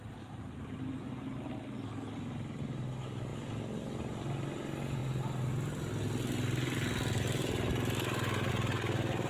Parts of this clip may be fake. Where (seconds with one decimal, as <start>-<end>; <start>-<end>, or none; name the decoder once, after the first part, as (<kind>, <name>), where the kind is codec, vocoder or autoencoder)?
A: none